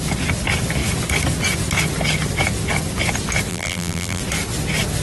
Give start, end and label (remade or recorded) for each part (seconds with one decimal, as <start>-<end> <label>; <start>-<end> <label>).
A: 0.0-3.5 recorded; 3.5-4.2 remade; 4.2-5.0 recorded